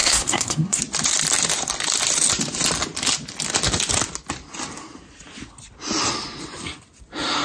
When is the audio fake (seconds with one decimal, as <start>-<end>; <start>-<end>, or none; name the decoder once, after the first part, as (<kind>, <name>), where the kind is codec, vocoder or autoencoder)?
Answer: 0.0-0.8 (codec, SNAC)